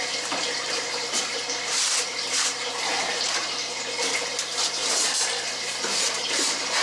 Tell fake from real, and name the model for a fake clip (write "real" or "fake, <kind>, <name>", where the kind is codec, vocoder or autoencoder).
fake, vocoder, BigVGAN v2